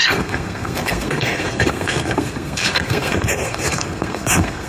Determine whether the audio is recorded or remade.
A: remade